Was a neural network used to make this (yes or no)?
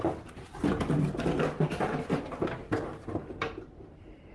no